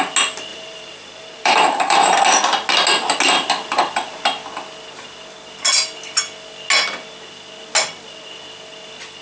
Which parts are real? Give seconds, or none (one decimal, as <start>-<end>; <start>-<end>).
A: 0.0-0.5; 2.2-9.2